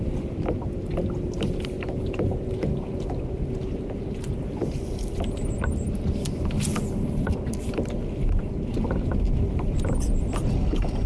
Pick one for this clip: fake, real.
real